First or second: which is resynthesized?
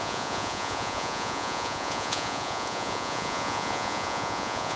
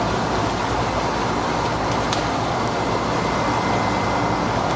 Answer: first